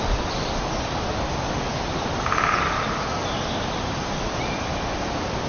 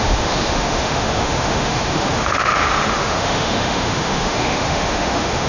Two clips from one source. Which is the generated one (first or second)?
second